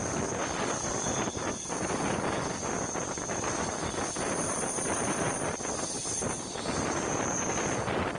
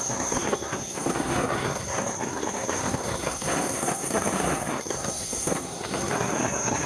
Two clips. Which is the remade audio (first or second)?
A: second